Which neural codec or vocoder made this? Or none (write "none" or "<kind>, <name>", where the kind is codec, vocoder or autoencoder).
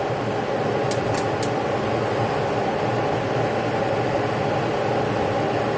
none